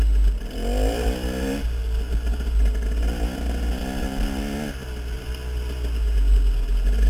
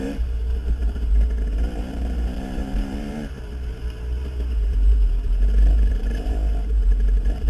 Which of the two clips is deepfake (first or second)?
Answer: second